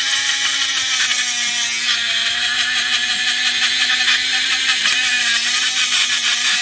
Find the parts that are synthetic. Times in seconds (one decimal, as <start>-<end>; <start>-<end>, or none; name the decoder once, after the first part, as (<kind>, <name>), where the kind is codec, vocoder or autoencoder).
0.0-1.1 (vocoder, BigVGAN v2); 2.1-6.6

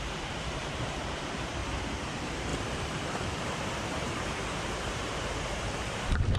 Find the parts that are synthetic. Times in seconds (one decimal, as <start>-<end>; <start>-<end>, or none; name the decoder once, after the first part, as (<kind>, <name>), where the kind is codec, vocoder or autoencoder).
0.0-1.6 (vocoder, BigVGAN v2); 2.1-6.4

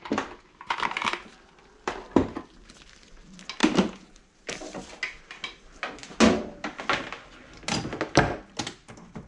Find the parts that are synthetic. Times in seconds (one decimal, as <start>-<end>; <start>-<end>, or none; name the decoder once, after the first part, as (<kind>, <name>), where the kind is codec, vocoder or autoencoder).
none

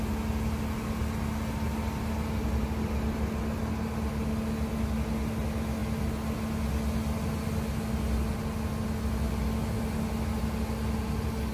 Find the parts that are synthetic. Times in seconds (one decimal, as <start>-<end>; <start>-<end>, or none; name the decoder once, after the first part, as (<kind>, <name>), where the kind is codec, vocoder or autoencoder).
none

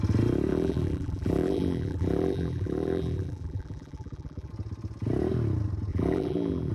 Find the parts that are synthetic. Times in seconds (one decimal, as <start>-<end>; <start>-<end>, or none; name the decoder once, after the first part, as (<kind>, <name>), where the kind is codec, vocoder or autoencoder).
0.5-4.5 (vocoder, BigVGAN v2); 5.9-6.7

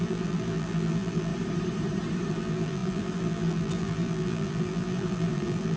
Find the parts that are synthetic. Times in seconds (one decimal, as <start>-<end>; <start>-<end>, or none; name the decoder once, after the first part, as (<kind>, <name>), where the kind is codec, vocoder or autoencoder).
0.0-1.3 (vocoder, BigVGAN v2); 2.3-5.8

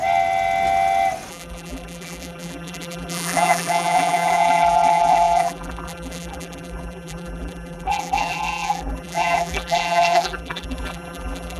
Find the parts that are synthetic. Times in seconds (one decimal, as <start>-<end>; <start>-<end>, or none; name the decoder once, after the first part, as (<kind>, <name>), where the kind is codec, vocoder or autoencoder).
1.3-11.6 (vocoder, BigVGAN v2)